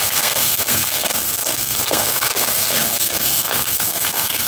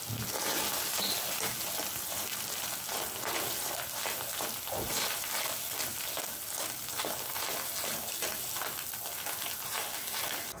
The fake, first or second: first